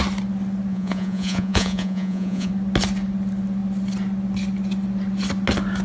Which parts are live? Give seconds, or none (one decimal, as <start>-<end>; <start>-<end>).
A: 0.0-0.7; 2.5-5.8